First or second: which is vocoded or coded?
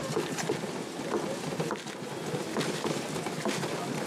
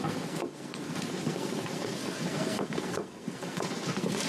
second